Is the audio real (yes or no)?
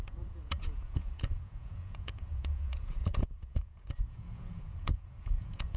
no